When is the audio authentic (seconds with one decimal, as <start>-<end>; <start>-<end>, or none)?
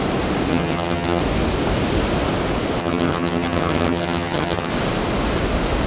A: 0.0-0.5; 1.2-2.8; 4.7-5.9